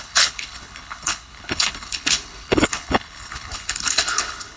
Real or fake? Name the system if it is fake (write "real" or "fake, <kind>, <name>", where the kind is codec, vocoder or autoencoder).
fake, codec, HILCodec